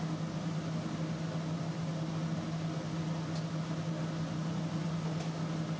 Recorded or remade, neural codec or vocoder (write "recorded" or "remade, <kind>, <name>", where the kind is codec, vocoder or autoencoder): recorded